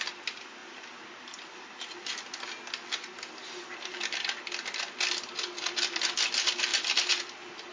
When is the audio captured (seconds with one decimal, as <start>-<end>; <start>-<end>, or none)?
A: 0.0-0.6; 1.7-7.7